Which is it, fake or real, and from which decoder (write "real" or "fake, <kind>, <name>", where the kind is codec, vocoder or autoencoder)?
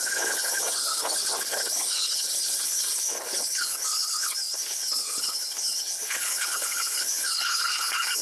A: fake, codec, HILCodec